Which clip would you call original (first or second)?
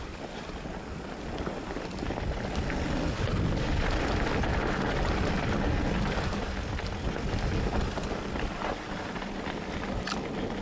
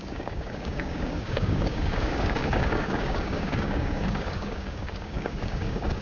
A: first